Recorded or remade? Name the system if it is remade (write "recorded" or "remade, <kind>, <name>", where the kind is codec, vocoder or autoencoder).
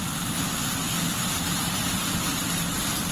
recorded